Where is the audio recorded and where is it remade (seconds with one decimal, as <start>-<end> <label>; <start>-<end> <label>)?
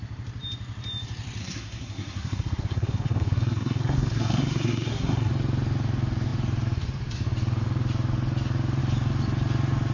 0.0-1.4 recorded; 1.4-5.3 remade; 5.3-9.9 recorded